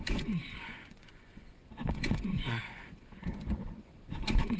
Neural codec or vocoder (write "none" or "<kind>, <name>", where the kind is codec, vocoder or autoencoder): vocoder, Vocos